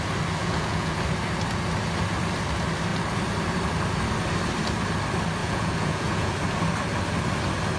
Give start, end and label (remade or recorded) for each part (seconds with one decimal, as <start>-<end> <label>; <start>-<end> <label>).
0.0-0.4 recorded; 0.4-1.0 remade; 1.0-5.4 recorded; 5.4-6.3 remade; 6.3-7.8 recorded